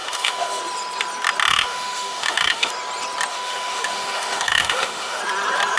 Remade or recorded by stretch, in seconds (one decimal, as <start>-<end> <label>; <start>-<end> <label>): 0.0-0.6 remade; 0.6-1.5 recorded; 1.5-2.7 remade; 2.7-3.3 recorded; 3.3-5.2 remade; 5.2-5.8 recorded